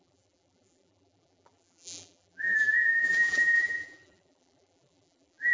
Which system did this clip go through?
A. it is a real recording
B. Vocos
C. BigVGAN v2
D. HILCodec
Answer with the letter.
C